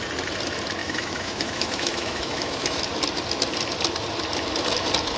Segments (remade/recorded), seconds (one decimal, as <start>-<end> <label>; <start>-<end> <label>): 0.0-0.8 recorded; 0.8-2.8 remade; 2.8-5.2 recorded